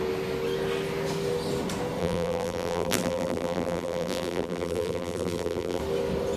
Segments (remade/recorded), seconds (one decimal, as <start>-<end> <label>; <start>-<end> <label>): 0.0-2.0 recorded; 2.0-5.8 remade; 5.8-6.4 recorded